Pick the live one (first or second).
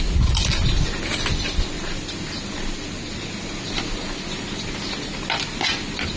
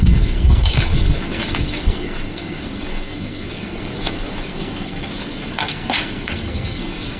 first